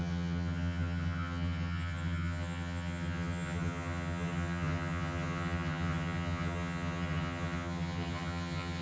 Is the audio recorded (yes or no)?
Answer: no